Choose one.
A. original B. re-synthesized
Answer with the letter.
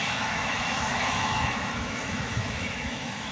B